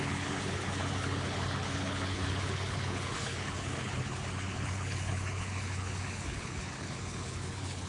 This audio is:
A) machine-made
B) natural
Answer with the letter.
A